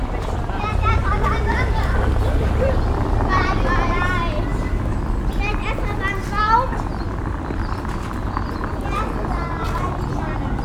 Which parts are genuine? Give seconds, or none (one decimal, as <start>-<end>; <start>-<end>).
1.1-4.5; 5.0-10.6